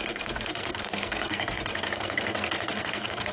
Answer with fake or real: fake